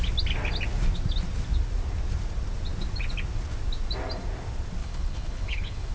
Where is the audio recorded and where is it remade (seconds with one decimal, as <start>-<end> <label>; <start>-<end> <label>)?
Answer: 0.0-4.8 recorded; 4.8-5.9 remade